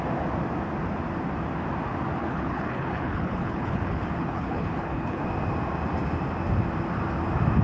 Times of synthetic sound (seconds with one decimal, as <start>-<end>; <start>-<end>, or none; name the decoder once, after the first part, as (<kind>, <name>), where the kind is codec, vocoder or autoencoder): 2.2-5.2 (codec, HILCodec)